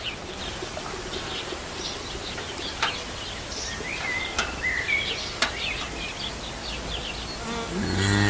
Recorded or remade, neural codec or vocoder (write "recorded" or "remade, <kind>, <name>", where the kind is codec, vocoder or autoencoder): recorded